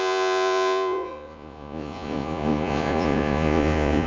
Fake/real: fake